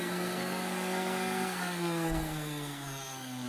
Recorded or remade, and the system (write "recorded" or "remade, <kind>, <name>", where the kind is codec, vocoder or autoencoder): remade, codec, SNAC